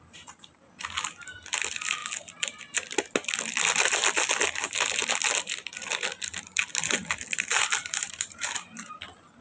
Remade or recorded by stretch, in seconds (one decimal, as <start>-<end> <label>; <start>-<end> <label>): 0.0-2.0 recorded; 2.0-2.6 remade; 2.6-7.8 recorded; 7.8-9.0 remade; 9.0-9.4 recorded

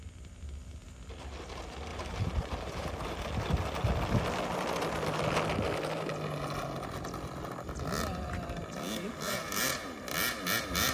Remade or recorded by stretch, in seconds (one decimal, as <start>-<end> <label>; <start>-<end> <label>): 0.0-1.9 recorded; 1.9-2.9 remade; 2.9-10.9 recorded